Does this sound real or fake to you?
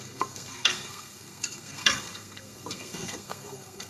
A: fake